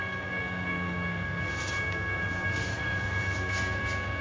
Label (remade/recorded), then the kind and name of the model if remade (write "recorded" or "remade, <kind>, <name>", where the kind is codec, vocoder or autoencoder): remade, codec, SNAC